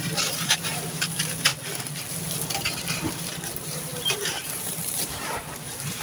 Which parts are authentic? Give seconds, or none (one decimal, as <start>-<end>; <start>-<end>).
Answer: 1.5-2.1